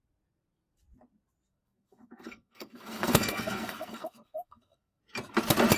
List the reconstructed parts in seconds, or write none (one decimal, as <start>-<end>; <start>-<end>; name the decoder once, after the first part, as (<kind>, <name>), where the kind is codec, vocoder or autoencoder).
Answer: 1.5-5.0 (codec, SNAC)